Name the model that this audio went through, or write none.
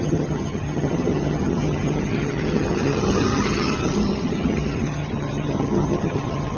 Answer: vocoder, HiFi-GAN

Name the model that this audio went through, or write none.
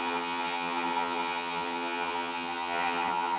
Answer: vocoder, HiFi-GAN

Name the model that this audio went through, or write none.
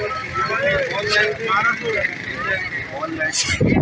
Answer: none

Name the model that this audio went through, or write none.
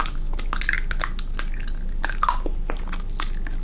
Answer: none